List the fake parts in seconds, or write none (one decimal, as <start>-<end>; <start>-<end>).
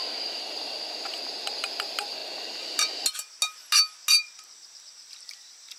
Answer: none